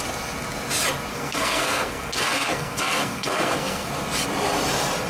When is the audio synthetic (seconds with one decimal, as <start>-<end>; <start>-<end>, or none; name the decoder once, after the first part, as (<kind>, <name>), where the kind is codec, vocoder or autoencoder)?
1.1-3.9 (codec, SNAC)